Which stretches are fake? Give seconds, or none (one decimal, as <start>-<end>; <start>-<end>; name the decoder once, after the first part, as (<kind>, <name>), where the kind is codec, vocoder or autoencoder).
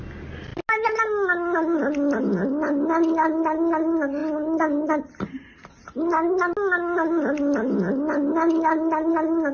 none